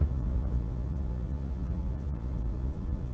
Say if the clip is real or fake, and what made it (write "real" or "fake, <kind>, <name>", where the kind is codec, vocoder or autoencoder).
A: fake, vocoder, Vocos